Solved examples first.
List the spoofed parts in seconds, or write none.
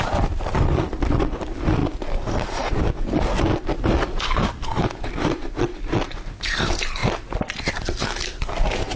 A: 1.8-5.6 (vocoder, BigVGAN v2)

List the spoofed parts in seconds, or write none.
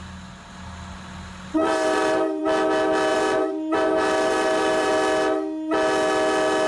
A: 1.6-2.4 (vocoder, BigVGAN v2); 3.1-4.9